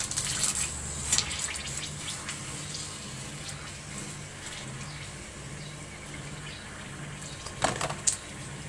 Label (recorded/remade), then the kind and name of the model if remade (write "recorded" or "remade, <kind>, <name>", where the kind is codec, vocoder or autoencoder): recorded